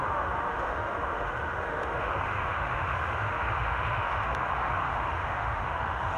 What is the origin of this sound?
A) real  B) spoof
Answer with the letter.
B